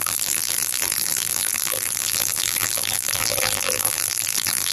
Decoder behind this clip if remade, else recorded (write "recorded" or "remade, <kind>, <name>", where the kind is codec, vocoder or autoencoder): remade, vocoder, BigVGAN v2